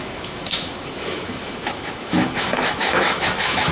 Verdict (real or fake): fake